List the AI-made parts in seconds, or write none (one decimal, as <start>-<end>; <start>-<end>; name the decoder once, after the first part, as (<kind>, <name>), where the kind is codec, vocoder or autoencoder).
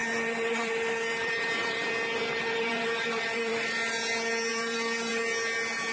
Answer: 0.0-3.5 (vocoder, BigVGAN v2); 4.5-5.1